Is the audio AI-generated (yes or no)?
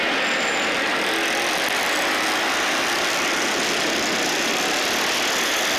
no